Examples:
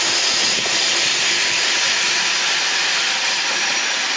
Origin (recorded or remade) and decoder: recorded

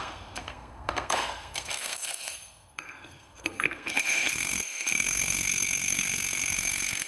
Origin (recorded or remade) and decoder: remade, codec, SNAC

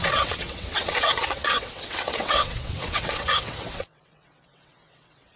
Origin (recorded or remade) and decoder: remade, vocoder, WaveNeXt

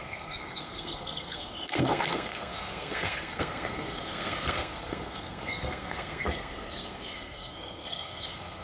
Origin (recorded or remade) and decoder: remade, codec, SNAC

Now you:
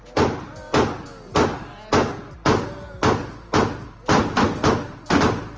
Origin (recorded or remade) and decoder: recorded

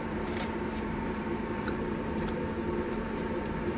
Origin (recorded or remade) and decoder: remade, vocoder, BigVGAN v2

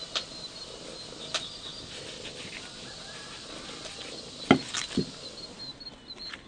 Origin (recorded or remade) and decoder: recorded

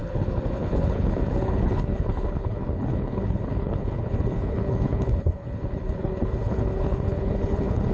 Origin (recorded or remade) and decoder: remade, codec, HILCodec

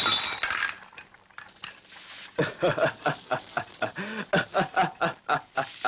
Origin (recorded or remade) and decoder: recorded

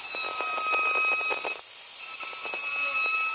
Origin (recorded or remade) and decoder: recorded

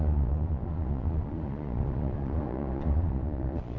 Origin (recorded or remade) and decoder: remade, vocoder, Vocos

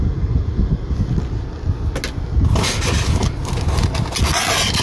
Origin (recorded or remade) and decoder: recorded